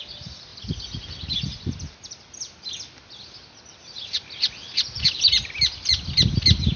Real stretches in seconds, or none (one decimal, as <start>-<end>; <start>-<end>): 0.0-6.8